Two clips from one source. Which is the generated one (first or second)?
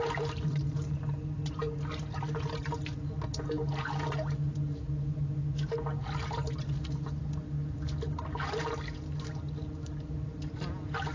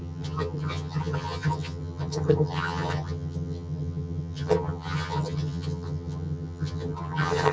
second